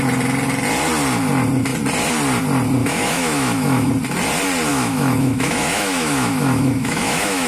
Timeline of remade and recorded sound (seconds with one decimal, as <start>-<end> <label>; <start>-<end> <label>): 0.0-2.8 recorded; 2.8-3.9 remade; 3.9-4.7 recorded; 4.7-7.5 remade